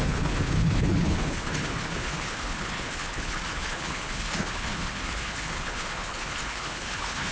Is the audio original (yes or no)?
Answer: no